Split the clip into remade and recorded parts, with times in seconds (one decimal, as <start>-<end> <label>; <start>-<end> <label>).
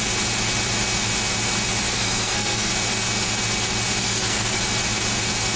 0.0-1.9 recorded; 1.9-2.7 remade; 2.7-4.0 recorded; 4.0-4.6 remade; 4.6-5.6 recorded